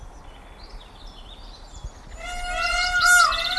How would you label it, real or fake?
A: real